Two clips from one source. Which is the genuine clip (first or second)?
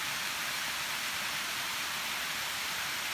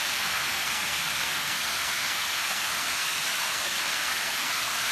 first